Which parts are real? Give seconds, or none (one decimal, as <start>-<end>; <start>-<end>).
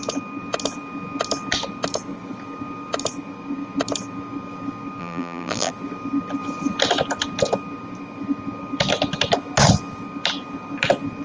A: 0.0-5.0; 5.7-11.2